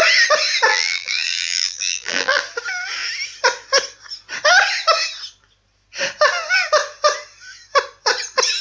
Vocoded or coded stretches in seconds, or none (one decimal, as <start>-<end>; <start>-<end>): 0.7-2.4